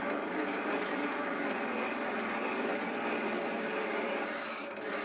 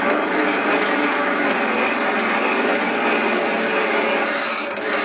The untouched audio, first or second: second